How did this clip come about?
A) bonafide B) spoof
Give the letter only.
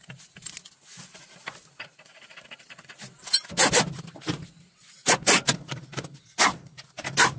A